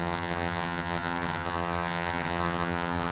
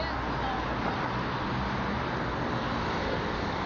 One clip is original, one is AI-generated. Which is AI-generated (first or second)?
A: first